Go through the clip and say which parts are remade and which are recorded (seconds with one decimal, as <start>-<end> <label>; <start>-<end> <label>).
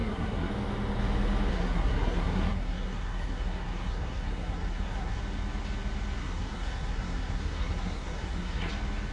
0.0-0.5 remade; 0.5-1.5 recorded; 1.5-5.2 remade; 5.2-6.2 recorded; 6.2-8.7 remade; 8.7-9.1 recorded